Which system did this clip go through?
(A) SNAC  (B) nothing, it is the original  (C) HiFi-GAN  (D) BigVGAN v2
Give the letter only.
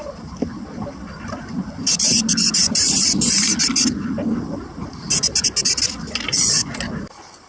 B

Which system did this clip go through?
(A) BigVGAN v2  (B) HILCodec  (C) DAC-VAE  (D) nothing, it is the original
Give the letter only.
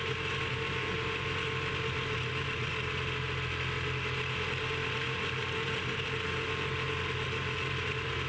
D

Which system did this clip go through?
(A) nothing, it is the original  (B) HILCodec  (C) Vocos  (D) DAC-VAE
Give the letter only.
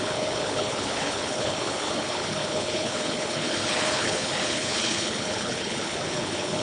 B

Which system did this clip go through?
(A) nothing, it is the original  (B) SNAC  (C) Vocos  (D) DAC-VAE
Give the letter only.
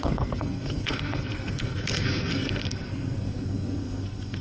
B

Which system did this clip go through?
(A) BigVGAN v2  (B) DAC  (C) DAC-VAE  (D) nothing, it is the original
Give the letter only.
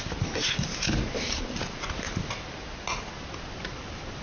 D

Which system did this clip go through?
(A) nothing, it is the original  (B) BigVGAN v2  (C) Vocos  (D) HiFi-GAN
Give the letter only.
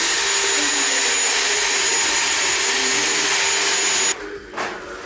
A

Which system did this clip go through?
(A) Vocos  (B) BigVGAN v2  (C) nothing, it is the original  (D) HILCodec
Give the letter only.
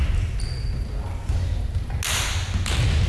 C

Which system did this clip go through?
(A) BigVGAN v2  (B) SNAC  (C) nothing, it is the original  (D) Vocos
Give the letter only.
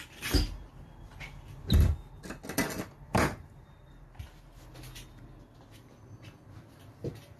C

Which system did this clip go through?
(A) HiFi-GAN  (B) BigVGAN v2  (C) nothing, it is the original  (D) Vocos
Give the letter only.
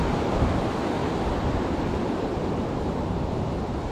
C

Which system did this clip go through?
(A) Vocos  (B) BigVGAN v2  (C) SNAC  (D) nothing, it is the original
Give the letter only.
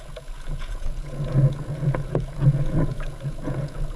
A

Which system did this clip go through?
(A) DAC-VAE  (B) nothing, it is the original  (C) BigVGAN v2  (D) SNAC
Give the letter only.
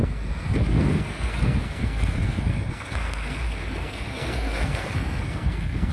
D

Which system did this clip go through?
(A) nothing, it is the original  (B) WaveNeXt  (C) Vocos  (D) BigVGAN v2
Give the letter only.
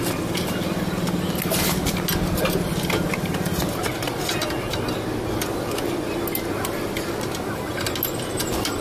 A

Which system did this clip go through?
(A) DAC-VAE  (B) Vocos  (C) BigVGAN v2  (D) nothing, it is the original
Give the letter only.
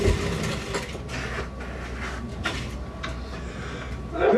D